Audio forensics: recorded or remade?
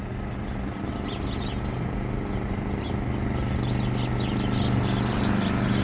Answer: recorded